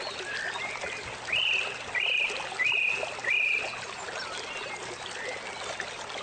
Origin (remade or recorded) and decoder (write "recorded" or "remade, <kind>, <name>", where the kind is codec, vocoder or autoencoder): recorded